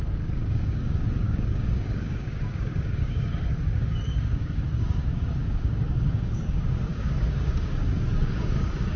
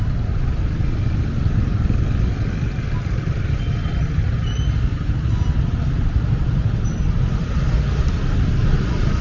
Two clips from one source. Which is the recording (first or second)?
second